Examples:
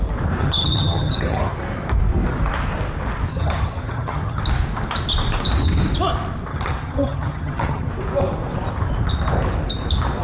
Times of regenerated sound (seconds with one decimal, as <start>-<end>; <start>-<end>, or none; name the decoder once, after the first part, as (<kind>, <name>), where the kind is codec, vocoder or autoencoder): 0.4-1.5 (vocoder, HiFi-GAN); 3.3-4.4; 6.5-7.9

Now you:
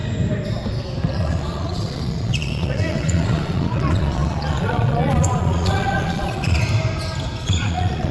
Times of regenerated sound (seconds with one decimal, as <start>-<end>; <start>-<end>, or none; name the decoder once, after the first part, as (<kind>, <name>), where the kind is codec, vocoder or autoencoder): 1.1-6.6 (vocoder, Vocos); 7.4-8.1

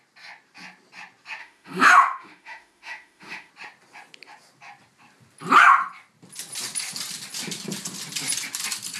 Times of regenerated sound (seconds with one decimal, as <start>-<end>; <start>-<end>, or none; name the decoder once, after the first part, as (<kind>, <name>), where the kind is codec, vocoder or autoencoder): 1.4-3.5 (autoencoder, DAC-VAE)